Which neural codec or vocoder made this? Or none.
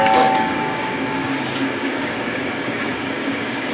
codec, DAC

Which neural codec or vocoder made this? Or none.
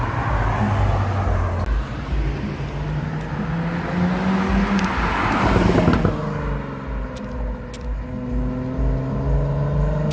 none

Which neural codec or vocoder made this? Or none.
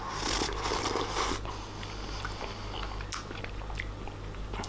none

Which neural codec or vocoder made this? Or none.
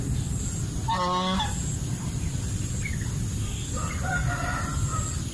none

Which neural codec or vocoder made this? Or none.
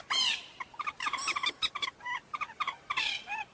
none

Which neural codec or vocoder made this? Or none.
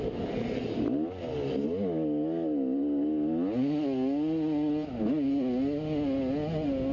none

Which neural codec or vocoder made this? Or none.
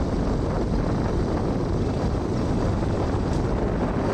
none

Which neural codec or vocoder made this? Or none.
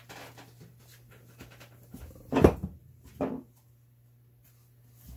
none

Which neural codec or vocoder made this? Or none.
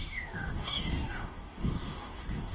codec, DAC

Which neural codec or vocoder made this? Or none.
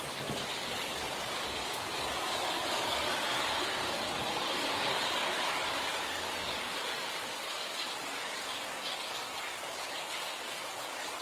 codec, DAC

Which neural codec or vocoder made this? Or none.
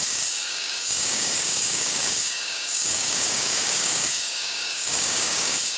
codec, DAC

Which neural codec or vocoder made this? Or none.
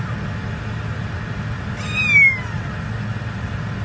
none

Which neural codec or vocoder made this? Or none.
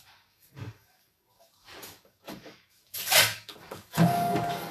codec, DAC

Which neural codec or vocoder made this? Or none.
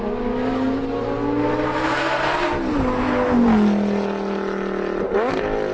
none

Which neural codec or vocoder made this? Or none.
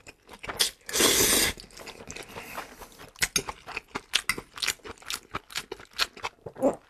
none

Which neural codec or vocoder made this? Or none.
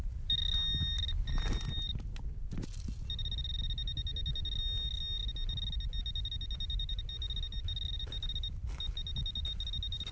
none